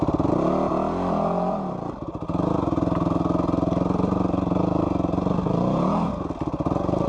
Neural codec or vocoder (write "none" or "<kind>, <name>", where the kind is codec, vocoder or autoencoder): none